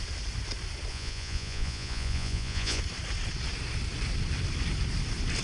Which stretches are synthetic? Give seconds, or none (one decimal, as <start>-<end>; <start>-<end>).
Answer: 0.9-2.8